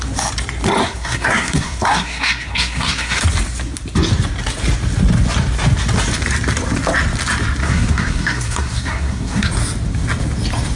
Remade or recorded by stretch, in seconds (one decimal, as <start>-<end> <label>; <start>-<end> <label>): 0.0-0.8 recorded; 0.8-3.2 remade; 3.2-7.6 recorded; 7.6-9.5 remade; 9.5-10.8 recorded